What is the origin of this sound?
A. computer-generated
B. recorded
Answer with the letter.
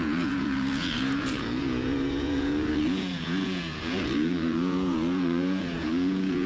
A